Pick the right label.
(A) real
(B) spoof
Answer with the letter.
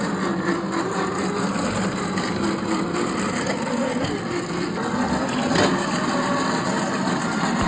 A